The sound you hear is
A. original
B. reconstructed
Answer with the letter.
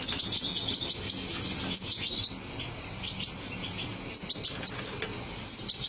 A